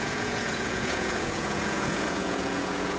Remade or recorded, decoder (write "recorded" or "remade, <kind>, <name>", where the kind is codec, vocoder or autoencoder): remade, vocoder, Vocos